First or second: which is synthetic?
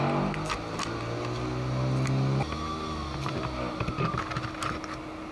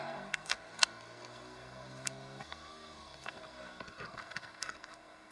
second